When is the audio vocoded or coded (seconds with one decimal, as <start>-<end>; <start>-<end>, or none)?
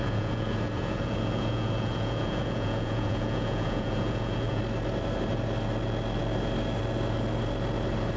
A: 0.0-4.6